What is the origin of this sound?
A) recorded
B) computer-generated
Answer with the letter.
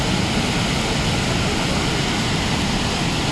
A